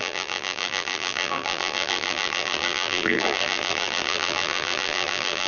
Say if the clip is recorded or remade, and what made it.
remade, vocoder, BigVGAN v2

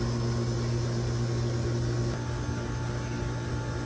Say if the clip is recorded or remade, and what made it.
recorded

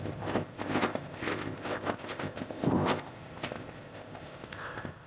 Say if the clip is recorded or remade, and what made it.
remade, codec, ZipCodec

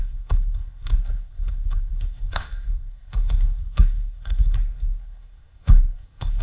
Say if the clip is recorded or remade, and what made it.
remade, codec, SNAC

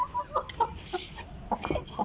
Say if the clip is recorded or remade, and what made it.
recorded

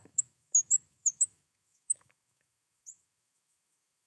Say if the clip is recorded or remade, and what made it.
remade, autoencoder, DAC-VAE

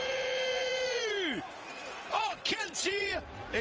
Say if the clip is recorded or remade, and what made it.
remade, vocoder, Vocos